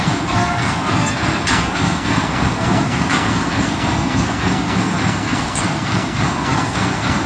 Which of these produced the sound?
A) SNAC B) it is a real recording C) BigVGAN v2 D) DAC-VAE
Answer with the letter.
A